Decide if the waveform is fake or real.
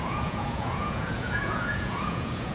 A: fake